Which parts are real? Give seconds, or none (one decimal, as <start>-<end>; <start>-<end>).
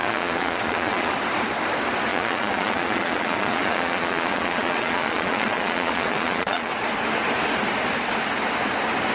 1.1-2.1; 6.7-9.1